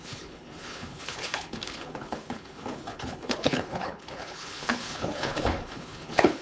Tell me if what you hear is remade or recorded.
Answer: remade